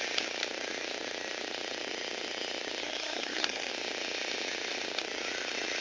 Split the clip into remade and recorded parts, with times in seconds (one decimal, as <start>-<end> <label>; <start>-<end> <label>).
0.0-2.8 recorded; 2.8-3.7 remade; 3.7-5.8 recorded